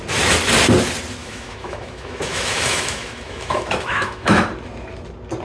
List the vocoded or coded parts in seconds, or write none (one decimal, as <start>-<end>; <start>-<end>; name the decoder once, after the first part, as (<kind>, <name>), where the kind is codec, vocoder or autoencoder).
1.2-4.4 (autoencoder, DAC-VAE)

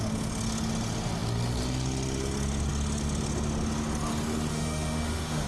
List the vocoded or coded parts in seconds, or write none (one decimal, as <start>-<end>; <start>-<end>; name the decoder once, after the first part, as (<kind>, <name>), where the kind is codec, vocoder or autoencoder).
4.5-5.5 (autoencoder, DAC-VAE)